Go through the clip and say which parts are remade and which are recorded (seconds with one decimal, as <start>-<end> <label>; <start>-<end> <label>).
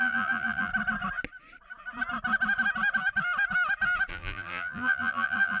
0.0-0.7 remade; 0.7-4.1 recorded; 4.1-5.6 remade